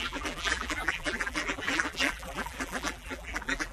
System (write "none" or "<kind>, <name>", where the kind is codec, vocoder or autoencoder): vocoder, BigVGAN v2